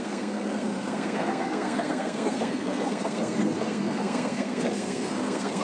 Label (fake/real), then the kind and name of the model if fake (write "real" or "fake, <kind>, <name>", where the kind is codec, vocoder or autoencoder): fake, codec, SNAC